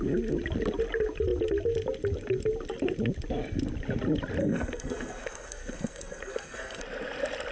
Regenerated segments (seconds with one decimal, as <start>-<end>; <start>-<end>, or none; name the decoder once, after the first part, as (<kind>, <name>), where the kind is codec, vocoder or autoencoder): 4.4-6.8 (codec, SNAC)